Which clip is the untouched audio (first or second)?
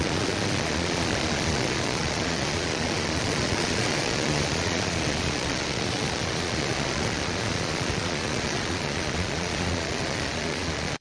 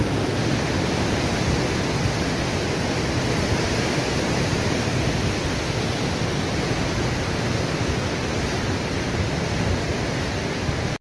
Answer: second